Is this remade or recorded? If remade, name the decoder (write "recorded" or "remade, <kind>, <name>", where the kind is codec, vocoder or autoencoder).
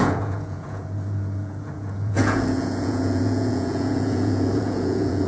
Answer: remade, vocoder, Vocos